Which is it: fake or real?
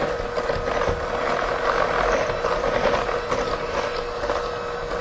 real